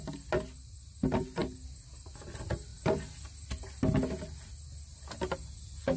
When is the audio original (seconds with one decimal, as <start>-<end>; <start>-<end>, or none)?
0.0-6.0